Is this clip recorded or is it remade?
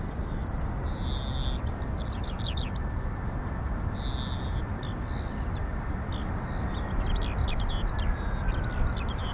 recorded